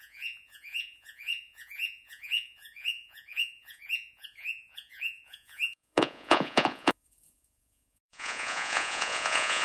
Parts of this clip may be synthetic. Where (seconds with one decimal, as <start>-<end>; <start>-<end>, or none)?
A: 0.0-9.6